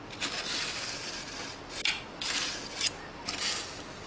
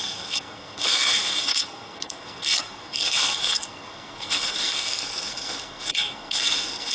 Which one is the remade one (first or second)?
second